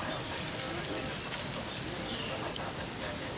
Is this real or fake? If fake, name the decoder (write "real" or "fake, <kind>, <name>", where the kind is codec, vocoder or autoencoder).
real